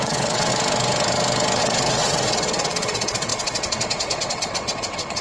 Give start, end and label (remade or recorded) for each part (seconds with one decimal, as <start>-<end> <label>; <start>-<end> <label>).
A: 0.0-0.5 remade; 0.5-1.6 recorded; 1.6-5.2 remade